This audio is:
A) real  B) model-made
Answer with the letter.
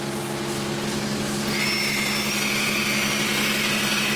A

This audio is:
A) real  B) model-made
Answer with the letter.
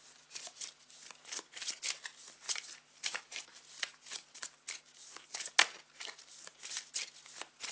A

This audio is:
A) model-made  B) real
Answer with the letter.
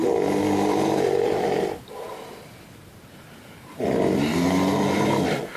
B